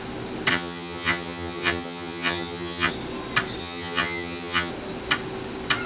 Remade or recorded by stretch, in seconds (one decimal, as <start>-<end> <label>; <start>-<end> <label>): 0.0-0.5 recorded; 0.5-2.9 remade; 2.9-3.6 recorded; 3.6-4.7 remade; 4.7-5.9 recorded